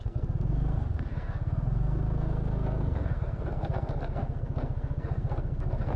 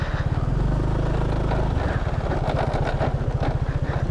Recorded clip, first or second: second